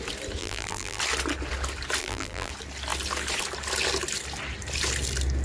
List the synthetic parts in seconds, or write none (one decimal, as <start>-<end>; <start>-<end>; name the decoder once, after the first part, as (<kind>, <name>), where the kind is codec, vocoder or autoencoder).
0.4-1.0 (vocoder, BigVGAN v2); 2.0-2.5

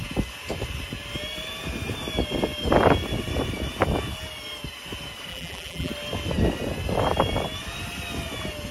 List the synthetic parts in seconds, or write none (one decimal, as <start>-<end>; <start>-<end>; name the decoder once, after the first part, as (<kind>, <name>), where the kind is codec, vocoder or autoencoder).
5.3-5.9 (vocoder, BigVGAN v2)

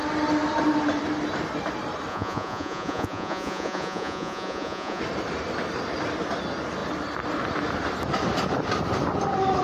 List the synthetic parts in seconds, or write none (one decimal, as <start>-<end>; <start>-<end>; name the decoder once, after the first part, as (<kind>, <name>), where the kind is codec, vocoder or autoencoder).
2.1-5.0 (vocoder, Vocos)

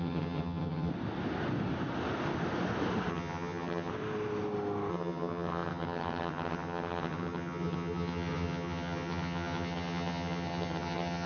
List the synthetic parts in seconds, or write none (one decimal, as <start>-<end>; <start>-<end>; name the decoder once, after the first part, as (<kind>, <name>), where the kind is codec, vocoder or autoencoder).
0.0-0.9 (vocoder, HiFi-GAN); 3.1-3.9; 4.9-11.3

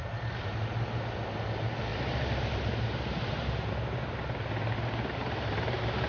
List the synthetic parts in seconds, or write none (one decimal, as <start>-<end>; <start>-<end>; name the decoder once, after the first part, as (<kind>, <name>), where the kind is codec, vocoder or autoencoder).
1.9-3.7 (vocoder, BigVGAN v2); 5.2-6.1

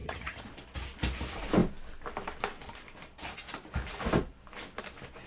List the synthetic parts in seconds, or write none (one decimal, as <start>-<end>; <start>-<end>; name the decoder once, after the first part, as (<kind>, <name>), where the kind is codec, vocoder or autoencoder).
0.0-0.5 (vocoder, HiFi-GAN)

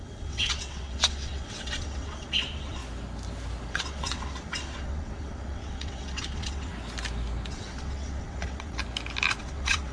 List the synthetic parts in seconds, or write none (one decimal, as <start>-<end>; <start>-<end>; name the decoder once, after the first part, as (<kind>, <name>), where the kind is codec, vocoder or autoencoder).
0.0-2.8 (vocoder, WaveNeXt); 3.7-6.7; 7.5-8.8; 9.4-9.9

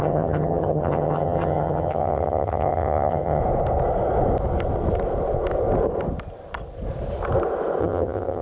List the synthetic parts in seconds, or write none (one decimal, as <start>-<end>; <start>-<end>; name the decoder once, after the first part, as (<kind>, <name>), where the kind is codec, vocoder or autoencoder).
0.0-3.4 (vocoder, HiFi-GAN); 7.8-8.4